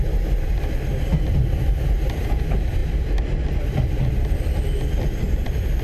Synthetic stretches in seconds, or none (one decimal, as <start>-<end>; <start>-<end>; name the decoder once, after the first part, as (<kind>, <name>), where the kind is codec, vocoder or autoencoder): none